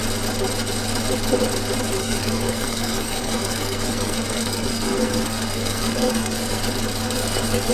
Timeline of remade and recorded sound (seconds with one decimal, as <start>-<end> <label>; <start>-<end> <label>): 0.0-2.0 recorded; 2.0-6.6 remade; 6.6-7.0 recorded; 7.0-7.7 remade